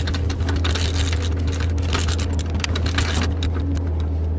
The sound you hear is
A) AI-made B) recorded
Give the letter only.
B